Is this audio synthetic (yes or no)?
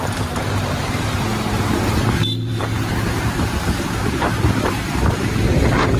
yes